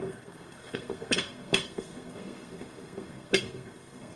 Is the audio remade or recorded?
remade